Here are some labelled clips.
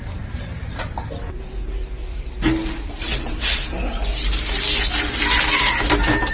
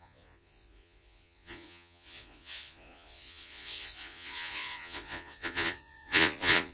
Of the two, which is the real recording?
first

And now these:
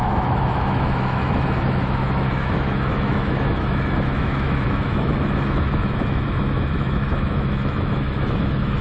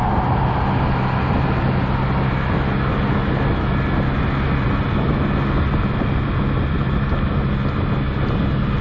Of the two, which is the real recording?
second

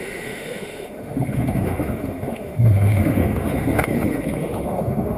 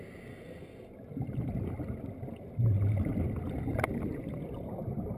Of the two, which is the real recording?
second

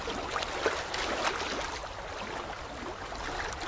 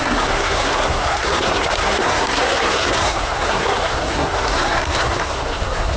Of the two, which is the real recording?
first